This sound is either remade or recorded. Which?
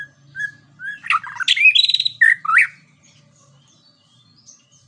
recorded